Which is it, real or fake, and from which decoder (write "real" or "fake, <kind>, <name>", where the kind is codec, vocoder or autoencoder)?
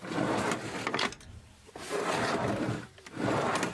fake, vocoder, BigVGAN v2